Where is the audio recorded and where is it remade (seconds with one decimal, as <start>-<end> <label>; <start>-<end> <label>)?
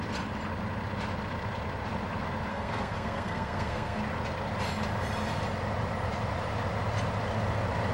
0.0-2.5 recorded; 2.5-4.0 remade; 4.0-7.9 recorded